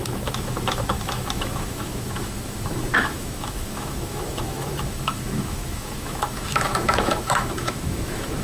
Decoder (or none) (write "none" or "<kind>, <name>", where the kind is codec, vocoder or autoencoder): autoencoder, DAC-VAE